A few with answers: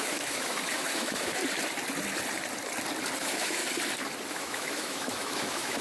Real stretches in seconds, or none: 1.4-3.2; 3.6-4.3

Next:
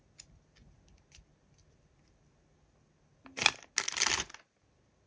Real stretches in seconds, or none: 0.0-5.1

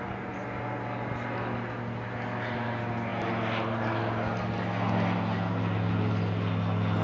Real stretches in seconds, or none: 0.0-7.0